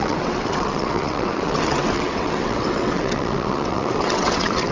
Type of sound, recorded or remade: remade